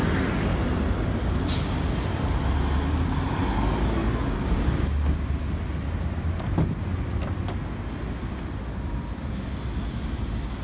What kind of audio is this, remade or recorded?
recorded